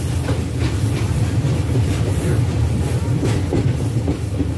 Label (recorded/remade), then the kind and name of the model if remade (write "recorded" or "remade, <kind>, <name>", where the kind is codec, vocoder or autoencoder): remade, vocoder, BigVGAN v2